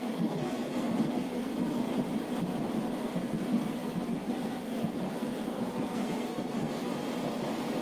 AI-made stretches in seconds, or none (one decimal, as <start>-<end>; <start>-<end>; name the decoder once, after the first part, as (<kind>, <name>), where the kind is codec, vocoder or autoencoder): 0.0-1.9 (codec, SNAC); 3.0-6.9